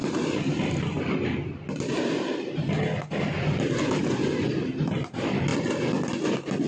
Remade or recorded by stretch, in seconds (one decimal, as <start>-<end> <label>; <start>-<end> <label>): 0.0-6.7 recorded